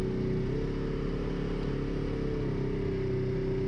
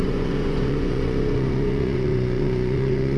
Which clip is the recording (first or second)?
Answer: first